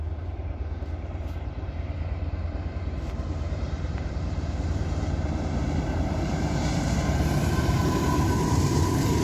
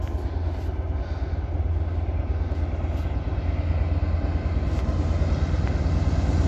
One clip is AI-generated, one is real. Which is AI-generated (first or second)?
first